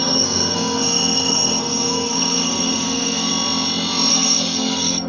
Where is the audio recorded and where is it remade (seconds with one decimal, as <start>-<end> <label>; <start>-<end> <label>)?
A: 0.0-3.3 remade; 3.3-4.1 recorded; 4.1-5.1 remade